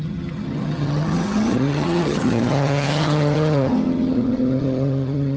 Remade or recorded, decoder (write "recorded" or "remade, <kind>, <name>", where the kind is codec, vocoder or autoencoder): remade, vocoder, HiFi-GAN